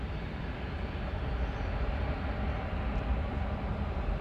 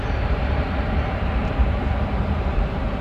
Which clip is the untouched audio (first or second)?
first